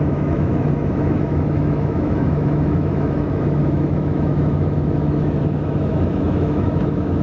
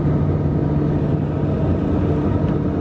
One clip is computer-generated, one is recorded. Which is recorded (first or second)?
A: second